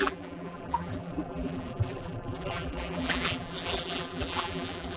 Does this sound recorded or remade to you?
remade